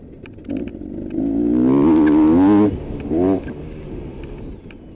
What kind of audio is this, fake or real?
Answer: real